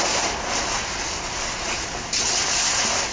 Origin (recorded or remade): recorded